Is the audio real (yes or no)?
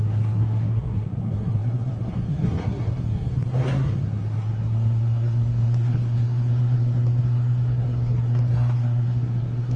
no